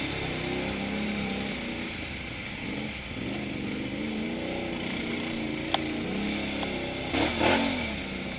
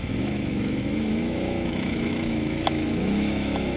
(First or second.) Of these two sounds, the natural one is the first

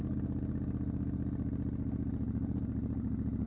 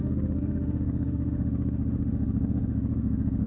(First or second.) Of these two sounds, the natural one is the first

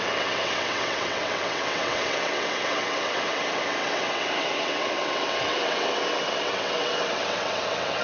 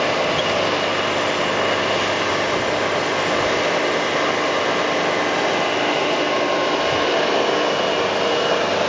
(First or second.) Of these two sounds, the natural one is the second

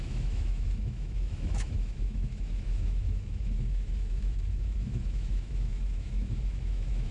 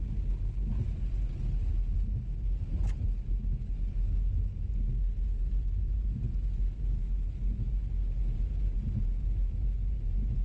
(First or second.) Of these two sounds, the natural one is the second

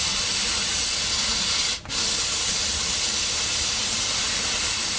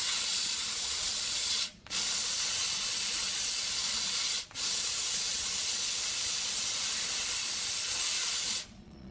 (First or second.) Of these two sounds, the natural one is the first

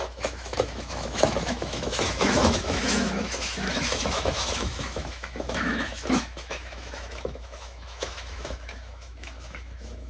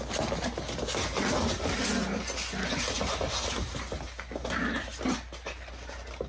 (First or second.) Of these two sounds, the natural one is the second